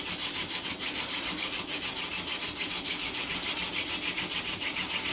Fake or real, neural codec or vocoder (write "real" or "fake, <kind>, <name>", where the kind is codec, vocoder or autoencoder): real